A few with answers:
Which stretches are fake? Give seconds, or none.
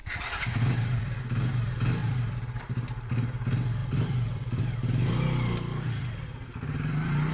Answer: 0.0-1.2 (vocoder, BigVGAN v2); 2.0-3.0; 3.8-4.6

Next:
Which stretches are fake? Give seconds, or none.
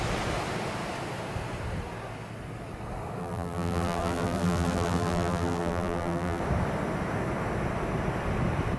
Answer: 3.2-6.4 (vocoder, BigVGAN v2)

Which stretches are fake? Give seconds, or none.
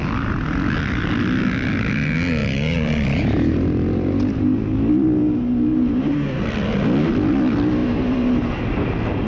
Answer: 2.4-4.9 (vocoder, BigVGAN v2); 5.7-6.4; 7.8-8.9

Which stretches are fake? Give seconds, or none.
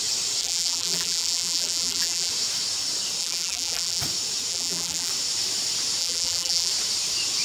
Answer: 0.4-2.3 (vocoder, BigVGAN v2); 3.2-4.0; 4.5-5.1; 6.0-6.7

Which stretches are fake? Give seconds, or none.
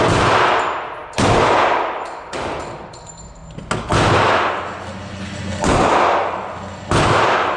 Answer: 1.0-2.6 (vocoder, BigVGAN v2)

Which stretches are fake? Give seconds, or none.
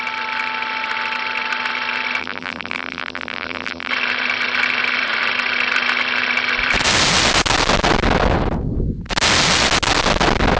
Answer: 2.2-3.9 (vocoder, BigVGAN v2)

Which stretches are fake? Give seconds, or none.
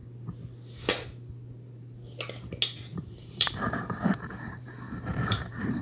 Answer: 2.9-5.8 (vocoder, BigVGAN v2)